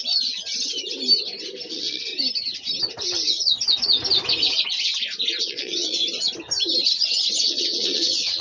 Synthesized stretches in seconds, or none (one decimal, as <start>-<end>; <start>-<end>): 1.7-2.1; 5.4-6.0; 7.4-8.4